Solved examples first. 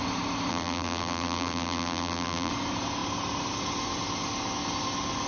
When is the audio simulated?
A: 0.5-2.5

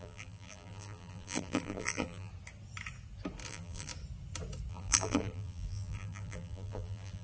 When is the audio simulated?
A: 0.0-2.3; 3.5-3.9; 4.7-7.2

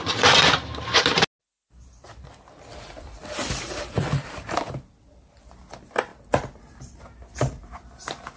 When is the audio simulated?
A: 3.2-4.6

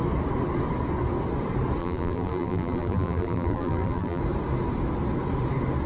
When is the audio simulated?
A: 1.8-4.2

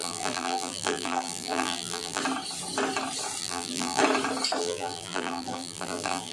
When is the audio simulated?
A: 0.0-2.2; 3.4-4.0; 4.6-6.3

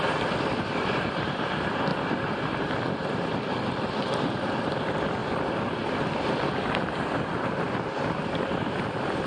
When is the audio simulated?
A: 0.0-5.2; 6.0-9.3